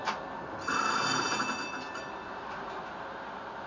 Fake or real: real